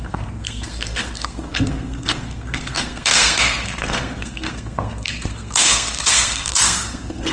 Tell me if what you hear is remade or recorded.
remade